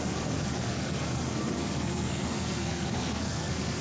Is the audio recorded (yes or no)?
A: no